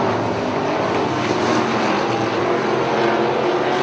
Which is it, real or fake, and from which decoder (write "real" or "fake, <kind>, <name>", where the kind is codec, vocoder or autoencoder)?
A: real